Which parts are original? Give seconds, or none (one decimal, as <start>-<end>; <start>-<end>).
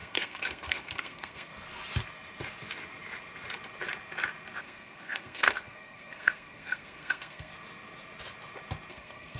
1.5-4.6; 7.5-8.9